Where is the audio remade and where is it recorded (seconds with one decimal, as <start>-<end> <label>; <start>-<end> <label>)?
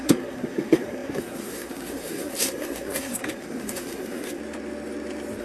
0.0-4.4 remade; 4.4-5.4 recorded